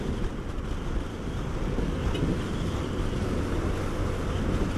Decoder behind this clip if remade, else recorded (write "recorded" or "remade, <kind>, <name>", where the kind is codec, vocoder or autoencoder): recorded